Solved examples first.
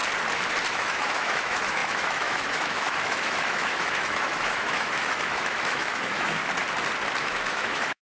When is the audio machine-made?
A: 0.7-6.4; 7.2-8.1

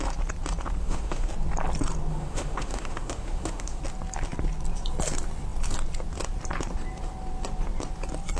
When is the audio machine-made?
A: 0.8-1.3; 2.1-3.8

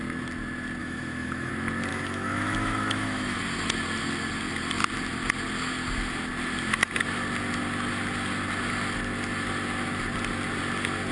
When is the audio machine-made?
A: 0.8-1.5; 1.9-3.4

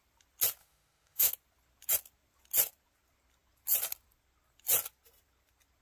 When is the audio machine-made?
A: 0.6-1.3

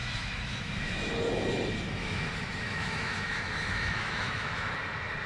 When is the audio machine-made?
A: 0.0-1.1; 2.0-4.7

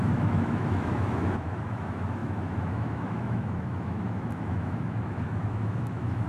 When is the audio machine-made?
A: 0.0-6.3

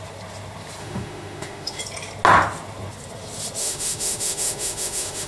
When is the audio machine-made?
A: 0.8-1.8; 3.6-5.3